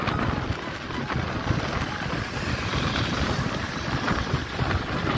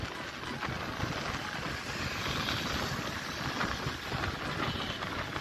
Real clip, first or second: second